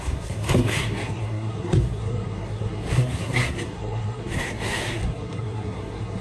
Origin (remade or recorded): remade